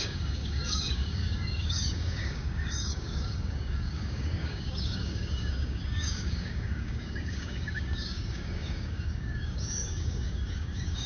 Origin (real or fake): fake